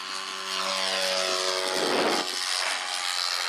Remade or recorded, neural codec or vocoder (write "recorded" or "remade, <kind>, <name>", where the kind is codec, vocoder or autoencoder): recorded